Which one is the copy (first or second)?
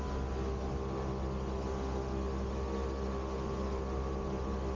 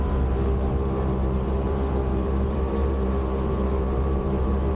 second